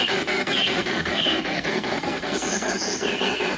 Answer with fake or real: fake